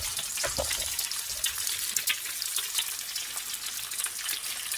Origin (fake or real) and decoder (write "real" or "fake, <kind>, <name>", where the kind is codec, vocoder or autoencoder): real